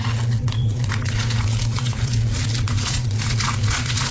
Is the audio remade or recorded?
remade